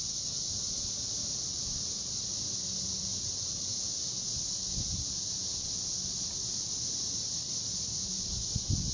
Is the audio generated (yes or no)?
no